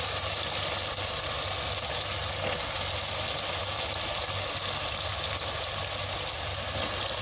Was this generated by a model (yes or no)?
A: no